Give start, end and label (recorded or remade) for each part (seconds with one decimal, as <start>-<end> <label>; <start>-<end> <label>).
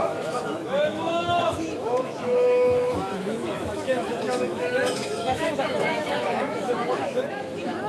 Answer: 0.0-7.9 remade